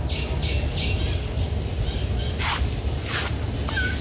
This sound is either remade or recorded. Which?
recorded